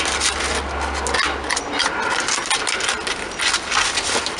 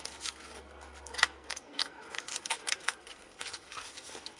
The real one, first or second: first